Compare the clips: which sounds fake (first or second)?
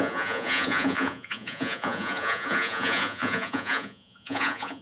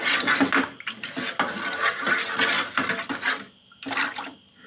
first